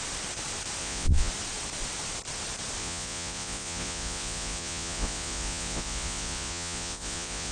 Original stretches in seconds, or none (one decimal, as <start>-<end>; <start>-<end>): 0.0-0.8; 1.3-2.8

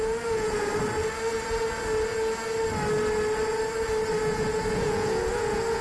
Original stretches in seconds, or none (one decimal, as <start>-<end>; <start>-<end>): 0.7-4.2

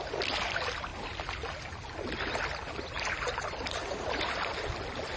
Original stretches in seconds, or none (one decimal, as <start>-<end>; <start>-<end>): 0.0-5.2

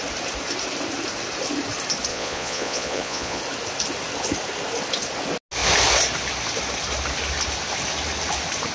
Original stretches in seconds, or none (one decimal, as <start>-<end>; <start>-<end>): 0.0-2.1; 3.4-8.7

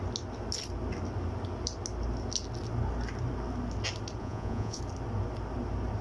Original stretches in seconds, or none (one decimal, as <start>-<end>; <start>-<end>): 0.0-4.2; 4.8-6.0

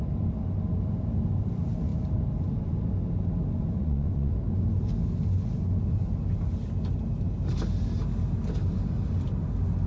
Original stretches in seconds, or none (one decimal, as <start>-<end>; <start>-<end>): 0.0-3.8; 4.3-9.9

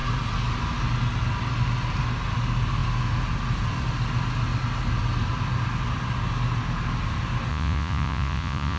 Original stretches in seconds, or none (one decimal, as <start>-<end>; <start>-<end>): 0.0-7.5